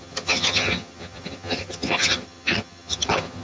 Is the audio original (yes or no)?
no